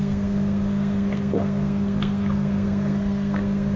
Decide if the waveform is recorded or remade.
remade